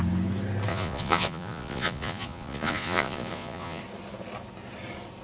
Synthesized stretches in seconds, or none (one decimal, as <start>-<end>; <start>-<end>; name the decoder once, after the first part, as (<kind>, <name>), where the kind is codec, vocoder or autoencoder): 0.7-3.8 (vocoder, Vocos)